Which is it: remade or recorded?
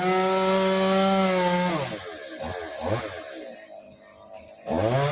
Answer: recorded